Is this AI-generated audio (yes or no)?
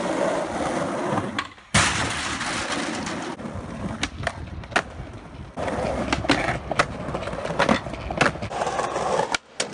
no